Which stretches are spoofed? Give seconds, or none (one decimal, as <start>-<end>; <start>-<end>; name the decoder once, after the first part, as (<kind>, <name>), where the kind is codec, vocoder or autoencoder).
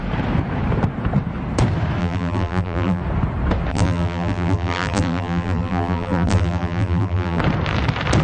2.0-3.0 (vocoder, BigVGAN v2); 3.7-7.4